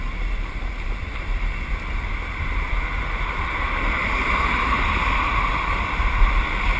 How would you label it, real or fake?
real